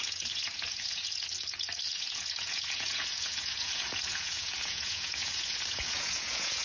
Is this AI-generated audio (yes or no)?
yes